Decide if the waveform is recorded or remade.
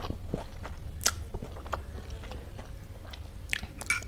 recorded